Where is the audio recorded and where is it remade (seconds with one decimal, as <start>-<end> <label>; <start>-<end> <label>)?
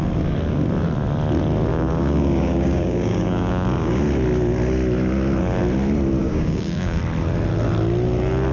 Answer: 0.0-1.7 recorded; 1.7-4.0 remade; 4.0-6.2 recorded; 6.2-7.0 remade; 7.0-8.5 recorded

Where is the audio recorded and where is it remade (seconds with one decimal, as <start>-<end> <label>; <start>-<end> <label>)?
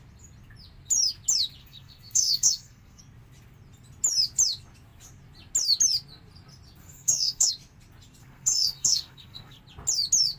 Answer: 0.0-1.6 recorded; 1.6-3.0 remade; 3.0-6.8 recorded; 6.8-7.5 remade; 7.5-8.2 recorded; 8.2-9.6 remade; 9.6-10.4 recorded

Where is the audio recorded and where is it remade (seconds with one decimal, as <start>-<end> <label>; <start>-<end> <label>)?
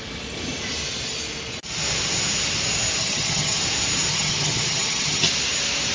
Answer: 0.0-3.0 recorded; 3.0-3.6 remade; 3.6-4.1 recorded; 4.1-5.3 remade; 5.3-5.9 recorded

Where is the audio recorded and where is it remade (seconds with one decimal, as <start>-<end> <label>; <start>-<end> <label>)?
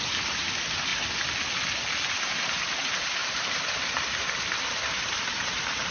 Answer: 0.0-5.9 recorded